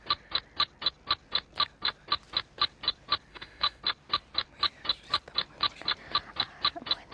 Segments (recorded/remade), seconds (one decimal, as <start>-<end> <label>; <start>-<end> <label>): 0.0-3.3 recorded; 3.3-3.8 remade; 3.8-7.1 recorded